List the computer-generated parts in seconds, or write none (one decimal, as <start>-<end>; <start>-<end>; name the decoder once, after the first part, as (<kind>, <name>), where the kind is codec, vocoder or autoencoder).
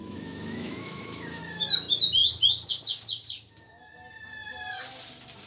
0.0-1.4 (autoencoder, DAC-VAE)